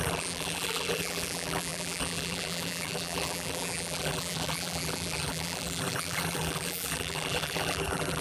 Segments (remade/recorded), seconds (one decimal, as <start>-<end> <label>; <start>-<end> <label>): 0.0-8.2 remade